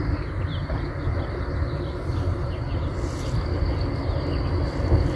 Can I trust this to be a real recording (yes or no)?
yes